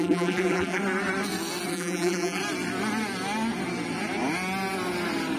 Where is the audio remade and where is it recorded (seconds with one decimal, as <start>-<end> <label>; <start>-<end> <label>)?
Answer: 0.0-0.8 remade; 0.8-1.7 recorded; 1.7-2.4 remade; 2.4-5.4 recorded

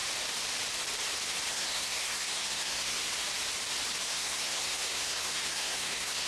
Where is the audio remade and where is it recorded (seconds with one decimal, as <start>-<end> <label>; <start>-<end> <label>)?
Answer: 0.0-1.5 recorded; 1.5-3.1 remade; 3.1-4.0 recorded; 4.0-6.3 remade